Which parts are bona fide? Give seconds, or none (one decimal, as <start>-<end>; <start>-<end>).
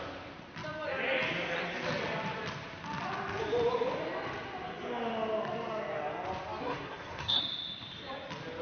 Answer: 0.0-6.6; 7.4-8.6